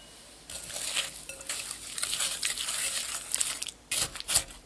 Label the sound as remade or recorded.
recorded